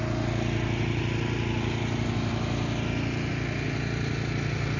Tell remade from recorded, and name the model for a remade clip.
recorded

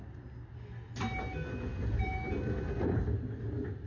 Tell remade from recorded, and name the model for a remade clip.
recorded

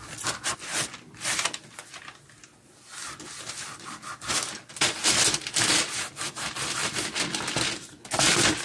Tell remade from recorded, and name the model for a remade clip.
recorded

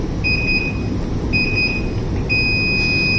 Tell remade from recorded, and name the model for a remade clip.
recorded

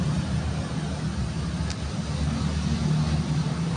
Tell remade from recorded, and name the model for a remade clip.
recorded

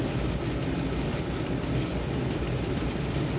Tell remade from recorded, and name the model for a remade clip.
recorded